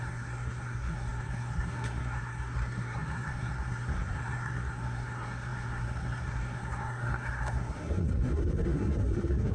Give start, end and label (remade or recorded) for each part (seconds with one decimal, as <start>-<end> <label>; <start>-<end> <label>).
0.0-9.5 remade